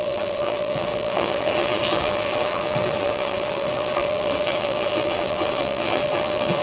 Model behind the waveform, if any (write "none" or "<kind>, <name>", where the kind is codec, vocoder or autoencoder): vocoder, WaveNeXt